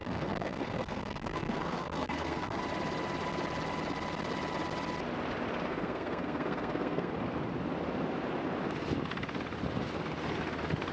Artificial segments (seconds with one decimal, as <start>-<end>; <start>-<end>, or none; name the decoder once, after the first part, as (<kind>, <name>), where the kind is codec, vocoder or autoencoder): 0.0-2.6 (codec, SNAC); 5.7-7.1